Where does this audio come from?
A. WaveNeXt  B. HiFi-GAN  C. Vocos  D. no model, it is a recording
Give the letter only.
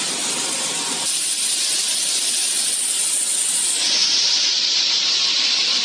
D